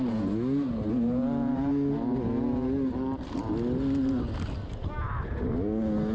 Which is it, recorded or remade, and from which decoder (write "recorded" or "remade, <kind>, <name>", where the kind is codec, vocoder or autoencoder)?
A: recorded